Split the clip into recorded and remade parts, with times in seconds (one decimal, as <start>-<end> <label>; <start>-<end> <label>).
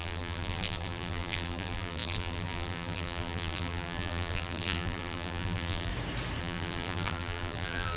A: 0.0-5.9 remade; 5.9-6.4 recorded; 6.4-8.0 remade